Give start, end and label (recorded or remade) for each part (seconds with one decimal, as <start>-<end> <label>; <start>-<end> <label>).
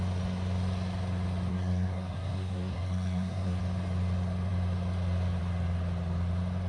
0.0-1.5 recorded; 1.5-3.6 remade; 3.6-6.7 recorded